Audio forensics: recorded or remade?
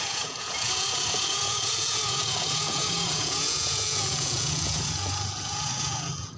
remade